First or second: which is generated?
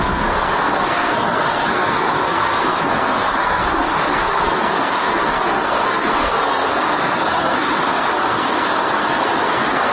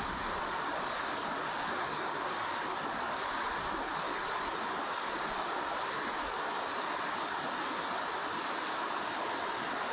first